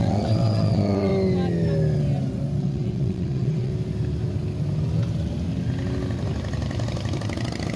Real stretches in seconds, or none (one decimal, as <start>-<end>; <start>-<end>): 1.1-2.6; 3.7-7.8